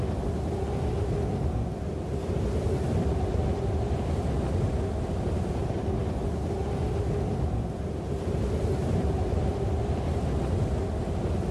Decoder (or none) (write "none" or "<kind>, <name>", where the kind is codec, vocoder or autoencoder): none